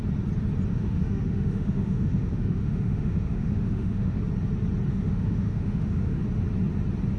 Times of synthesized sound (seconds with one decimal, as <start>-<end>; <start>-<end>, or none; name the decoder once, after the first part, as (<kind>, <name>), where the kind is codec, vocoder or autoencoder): 0.7-4.2 (autoencoder, DAC-VAE); 4.9-6.2

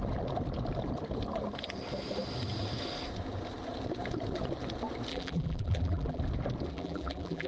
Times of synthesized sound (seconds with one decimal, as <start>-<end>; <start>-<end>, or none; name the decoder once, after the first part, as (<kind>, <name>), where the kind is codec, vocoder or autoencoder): 5.1-6.2 (vocoder, BigVGAN v2); 6.7-7.5